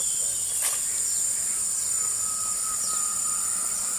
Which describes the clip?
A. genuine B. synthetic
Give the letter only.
A